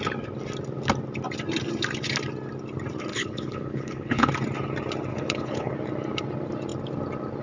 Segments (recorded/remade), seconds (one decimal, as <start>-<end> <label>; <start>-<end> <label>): 0.0-3.1 recorded; 3.1-4.3 remade; 4.3-5.1 recorded; 5.1-5.7 remade; 5.7-7.4 recorded